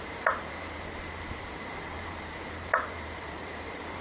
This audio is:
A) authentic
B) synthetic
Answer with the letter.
B